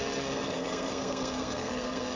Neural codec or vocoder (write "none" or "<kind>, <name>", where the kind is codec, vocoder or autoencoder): codec, SNAC